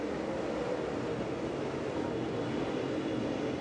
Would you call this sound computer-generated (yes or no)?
no